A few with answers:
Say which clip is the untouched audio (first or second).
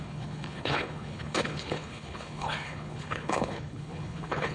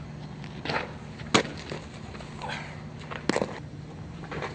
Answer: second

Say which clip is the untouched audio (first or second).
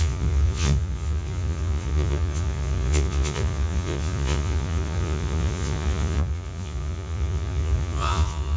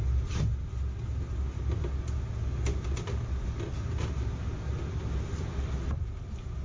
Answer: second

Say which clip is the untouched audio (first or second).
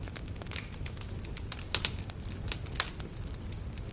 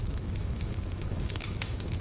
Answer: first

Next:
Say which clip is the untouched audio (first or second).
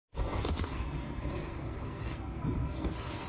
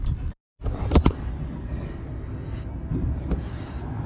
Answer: second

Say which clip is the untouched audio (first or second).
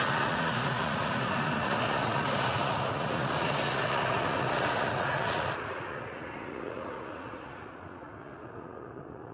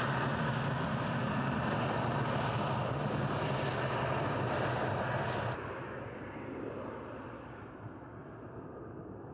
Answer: second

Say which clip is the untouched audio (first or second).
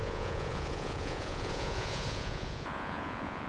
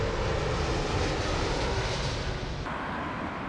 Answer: second